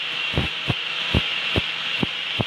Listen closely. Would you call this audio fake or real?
fake